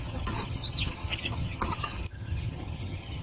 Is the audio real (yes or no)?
no